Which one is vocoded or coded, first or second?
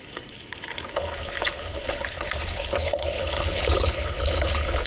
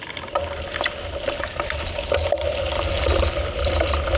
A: first